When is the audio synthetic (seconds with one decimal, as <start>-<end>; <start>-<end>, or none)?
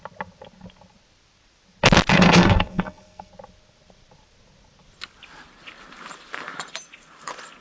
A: 2.1-3.3